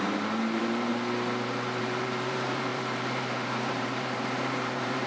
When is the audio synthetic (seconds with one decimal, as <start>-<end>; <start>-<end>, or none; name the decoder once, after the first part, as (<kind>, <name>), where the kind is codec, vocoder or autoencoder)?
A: 0.0-0.9 (vocoder, BigVGAN v2); 1.8-5.1